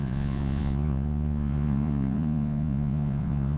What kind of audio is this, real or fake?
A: fake